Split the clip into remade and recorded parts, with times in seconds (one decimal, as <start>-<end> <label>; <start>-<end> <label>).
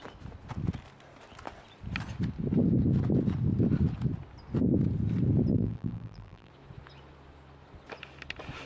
0.0-5.5 recorded; 5.5-6.5 remade; 6.5-8.7 recorded